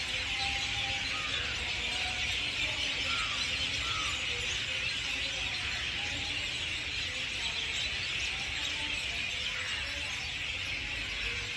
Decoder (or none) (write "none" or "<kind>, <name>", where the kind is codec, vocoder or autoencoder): none